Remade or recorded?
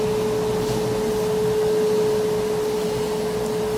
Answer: recorded